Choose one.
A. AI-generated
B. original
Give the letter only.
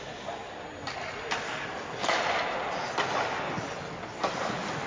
B